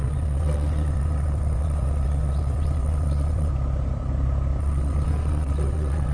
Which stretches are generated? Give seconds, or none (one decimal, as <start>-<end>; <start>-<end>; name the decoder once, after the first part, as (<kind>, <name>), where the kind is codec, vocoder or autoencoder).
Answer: 0.0-3.5 (vocoder, WaveNeXt); 4.6-6.1

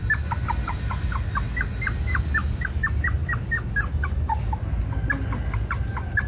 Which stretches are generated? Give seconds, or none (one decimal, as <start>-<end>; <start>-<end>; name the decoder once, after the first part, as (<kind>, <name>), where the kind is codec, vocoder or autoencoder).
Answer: none

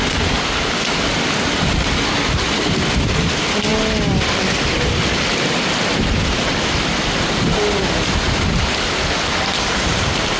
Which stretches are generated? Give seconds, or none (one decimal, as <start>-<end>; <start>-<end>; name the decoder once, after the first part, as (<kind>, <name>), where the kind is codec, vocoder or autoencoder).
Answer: none

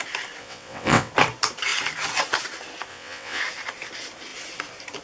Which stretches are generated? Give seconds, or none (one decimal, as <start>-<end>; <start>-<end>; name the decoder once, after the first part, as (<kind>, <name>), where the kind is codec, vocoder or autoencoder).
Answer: 0.4-1.1 (vocoder, WaveNeXt); 2.9-3.4

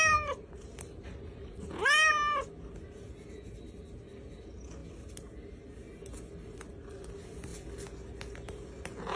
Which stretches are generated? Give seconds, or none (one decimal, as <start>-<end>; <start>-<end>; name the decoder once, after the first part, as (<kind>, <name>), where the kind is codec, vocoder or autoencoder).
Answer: none